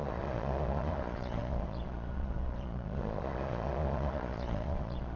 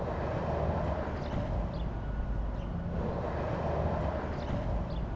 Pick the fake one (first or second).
first